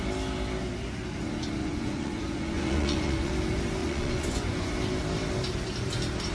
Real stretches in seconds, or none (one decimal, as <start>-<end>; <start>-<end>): 0.0-1.6; 3.3-3.8; 4.7-6.3